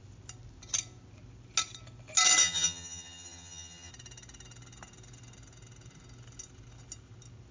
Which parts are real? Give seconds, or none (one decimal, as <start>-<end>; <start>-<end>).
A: 0.0-2.4; 3.9-7.5